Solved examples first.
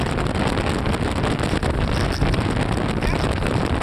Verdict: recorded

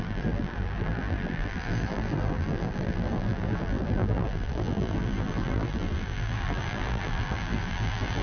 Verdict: remade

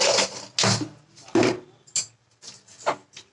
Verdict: recorded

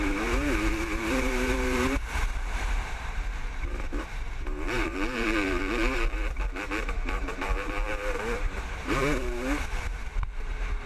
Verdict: remade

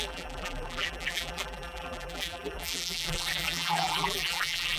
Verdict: remade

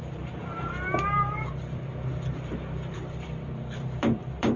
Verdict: remade